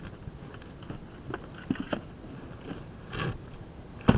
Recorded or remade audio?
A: recorded